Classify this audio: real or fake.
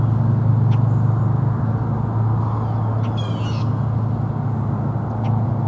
real